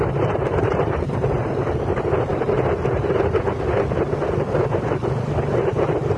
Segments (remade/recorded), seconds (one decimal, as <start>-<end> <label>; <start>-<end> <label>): 0.0-6.2 recorded